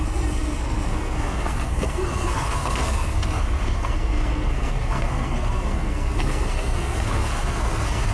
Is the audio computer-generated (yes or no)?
yes